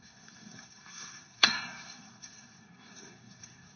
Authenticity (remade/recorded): remade